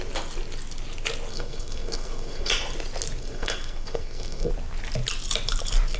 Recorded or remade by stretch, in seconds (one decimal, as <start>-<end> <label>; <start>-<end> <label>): 0.0-1.3 recorded; 1.3-2.5 remade; 2.5-3.2 recorded; 3.2-4.5 remade; 4.5-6.0 recorded